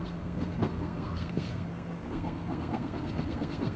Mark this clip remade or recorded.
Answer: remade